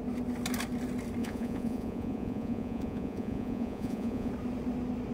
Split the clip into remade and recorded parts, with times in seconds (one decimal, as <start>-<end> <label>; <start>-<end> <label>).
0.0-1.2 recorded; 1.2-4.3 remade; 4.3-5.1 recorded